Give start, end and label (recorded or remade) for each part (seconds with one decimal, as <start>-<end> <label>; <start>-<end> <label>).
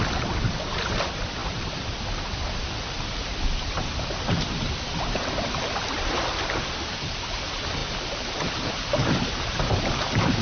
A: 0.0-10.4 remade